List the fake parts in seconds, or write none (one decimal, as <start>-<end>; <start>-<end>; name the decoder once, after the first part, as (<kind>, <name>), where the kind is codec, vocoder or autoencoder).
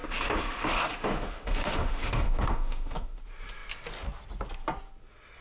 0.0-3.2 (autoencoder, DAC-VAE)